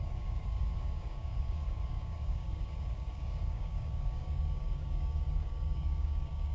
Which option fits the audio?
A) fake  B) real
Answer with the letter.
A